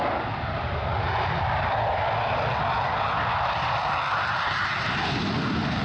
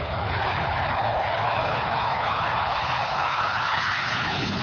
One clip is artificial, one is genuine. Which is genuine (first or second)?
first